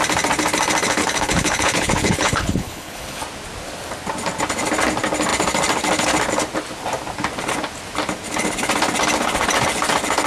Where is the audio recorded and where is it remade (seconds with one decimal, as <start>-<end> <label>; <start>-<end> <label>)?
0.0-1.0 recorded; 1.0-3.2 remade; 3.2-10.3 recorded